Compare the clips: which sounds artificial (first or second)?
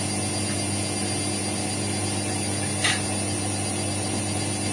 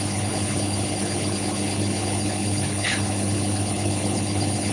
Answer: second